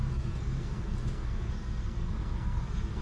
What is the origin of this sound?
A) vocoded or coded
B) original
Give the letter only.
A